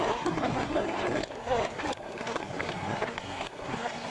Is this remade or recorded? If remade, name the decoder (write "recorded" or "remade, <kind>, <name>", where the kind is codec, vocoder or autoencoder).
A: remade, codec, SNAC